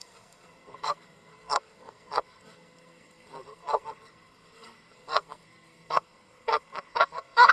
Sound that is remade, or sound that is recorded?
remade